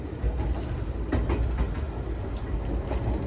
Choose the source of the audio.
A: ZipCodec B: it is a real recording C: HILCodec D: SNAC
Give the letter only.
B